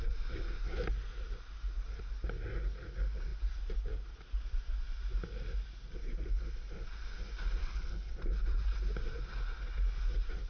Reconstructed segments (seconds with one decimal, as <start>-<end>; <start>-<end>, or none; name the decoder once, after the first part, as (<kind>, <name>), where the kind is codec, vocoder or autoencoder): 7.6-8.1 (codec, HILCodec)